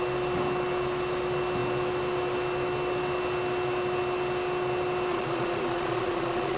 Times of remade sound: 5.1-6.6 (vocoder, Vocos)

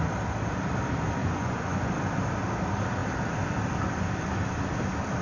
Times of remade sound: 1.2-1.9 (vocoder, Vocos)

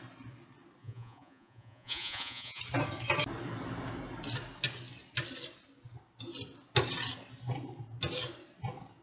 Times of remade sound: 0.8-2.6 (vocoder, Vocos)

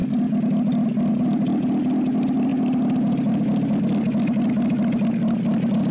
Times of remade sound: none

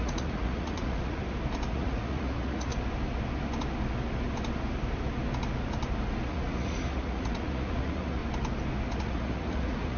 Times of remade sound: 0.0-1.2 (vocoder, Vocos); 1.7-2.7; 6.3-8.2; 9.0-10.0

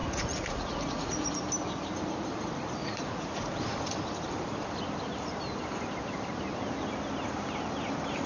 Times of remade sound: 0.0-1.3 (vocoder, Vocos); 2.8-3.4

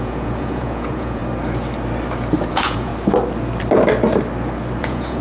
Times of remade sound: 0.0-1.2 (vocoder, Vocos); 2.5-2.9; 4.8-5.2

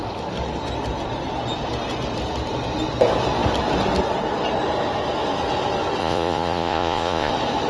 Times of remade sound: 6.0-7.3 (vocoder, Vocos)